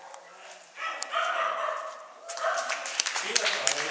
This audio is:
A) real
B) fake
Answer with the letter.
B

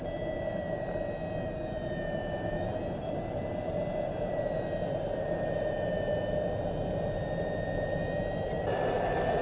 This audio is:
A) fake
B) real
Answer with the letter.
B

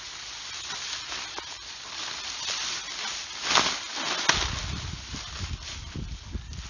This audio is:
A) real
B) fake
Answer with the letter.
A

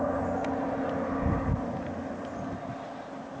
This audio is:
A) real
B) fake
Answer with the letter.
A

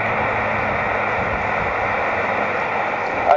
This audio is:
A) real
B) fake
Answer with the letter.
A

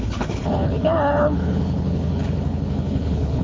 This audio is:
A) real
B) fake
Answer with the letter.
B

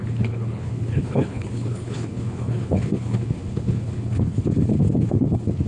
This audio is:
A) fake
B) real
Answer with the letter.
A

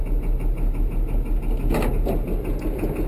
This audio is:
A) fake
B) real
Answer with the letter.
B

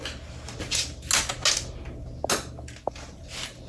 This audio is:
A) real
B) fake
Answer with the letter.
A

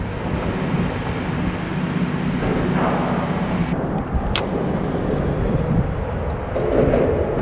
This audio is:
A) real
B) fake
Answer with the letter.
A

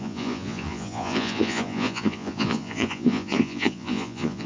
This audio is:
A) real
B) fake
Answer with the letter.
B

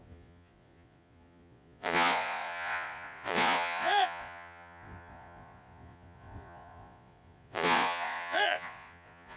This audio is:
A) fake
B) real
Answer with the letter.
A